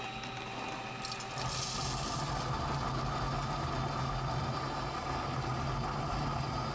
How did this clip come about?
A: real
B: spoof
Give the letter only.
A